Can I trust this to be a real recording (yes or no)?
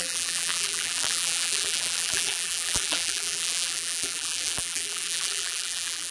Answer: no